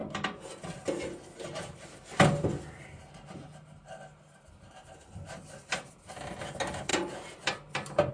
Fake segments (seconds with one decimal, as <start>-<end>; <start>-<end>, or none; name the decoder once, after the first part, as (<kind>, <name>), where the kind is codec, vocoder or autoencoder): none